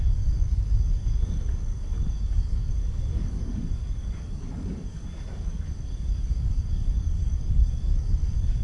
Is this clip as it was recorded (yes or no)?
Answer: no